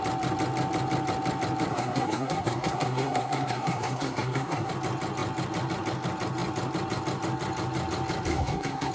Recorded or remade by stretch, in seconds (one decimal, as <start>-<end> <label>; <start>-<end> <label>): 0.0-1.7 recorded; 1.7-4.7 remade; 4.7-8.3 recorded; 8.3-8.9 remade